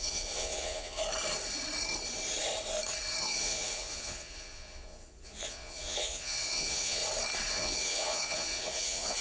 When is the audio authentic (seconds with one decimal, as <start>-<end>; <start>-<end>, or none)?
1.0-3.2; 7.0-7.5